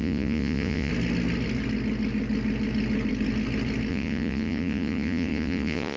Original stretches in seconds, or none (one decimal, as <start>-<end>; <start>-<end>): 0.9-3.9